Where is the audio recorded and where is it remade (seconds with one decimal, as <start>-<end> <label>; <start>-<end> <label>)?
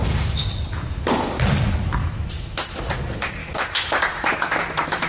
0.0-2.0 recorded; 2.0-2.8 remade; 2.8-3.4 recorded; 3.4-5.1 remade